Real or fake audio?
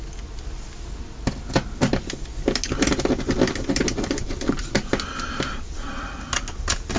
real